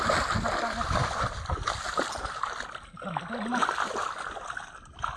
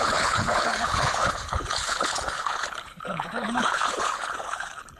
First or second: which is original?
first